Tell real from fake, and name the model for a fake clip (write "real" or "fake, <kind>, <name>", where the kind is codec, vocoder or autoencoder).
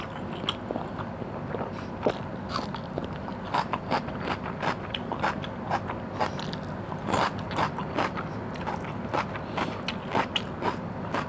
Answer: real